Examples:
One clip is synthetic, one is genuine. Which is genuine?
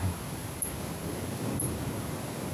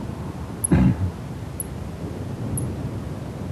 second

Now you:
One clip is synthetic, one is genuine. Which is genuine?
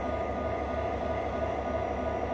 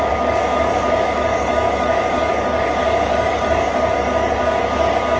first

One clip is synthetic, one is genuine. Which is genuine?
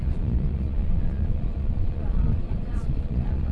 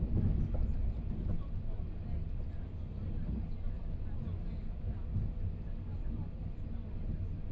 second